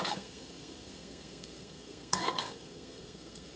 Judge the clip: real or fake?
fake